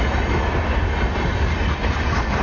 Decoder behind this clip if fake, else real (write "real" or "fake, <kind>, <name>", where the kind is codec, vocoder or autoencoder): real